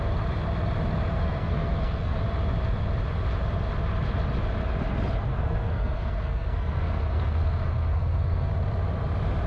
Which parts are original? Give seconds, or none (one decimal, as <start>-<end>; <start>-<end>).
0.0-1.1; 2.2-5.3; 8.5-9.5